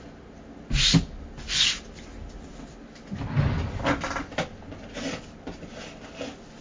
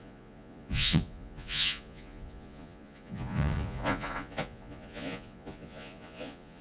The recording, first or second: first